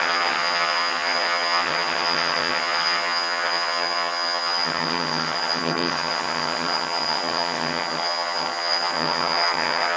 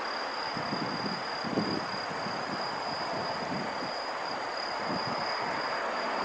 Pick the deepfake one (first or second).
first